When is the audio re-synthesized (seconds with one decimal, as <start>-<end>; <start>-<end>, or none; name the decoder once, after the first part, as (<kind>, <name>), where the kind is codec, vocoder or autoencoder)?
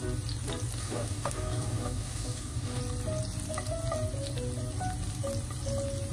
0.8-2.8 (codec, DAC)